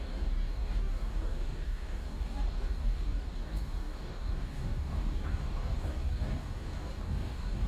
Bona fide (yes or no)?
no